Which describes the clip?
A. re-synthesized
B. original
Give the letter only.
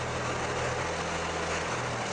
B